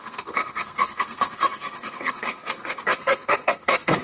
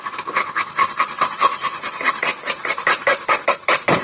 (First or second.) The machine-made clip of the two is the first